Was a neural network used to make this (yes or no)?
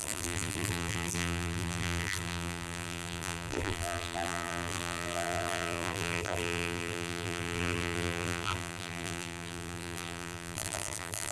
yes